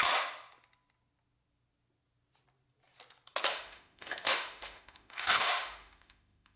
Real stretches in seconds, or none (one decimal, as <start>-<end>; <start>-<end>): 0.0-3.5